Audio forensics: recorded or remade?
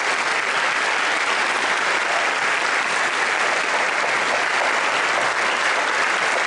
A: recorded